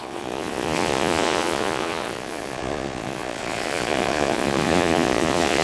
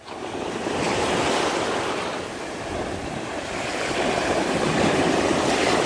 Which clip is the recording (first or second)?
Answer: second